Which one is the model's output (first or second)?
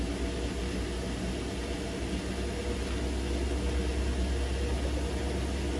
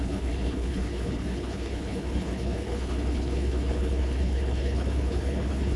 second